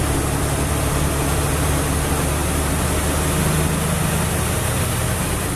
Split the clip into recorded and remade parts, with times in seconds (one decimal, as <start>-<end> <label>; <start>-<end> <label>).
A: 0.0-5.6 recorded